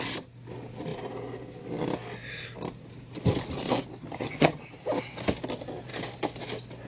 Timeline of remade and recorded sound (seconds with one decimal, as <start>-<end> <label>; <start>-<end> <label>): 0.0-4.0 recorded; 4.0-4.6 remade; 4.6-6.9 recorded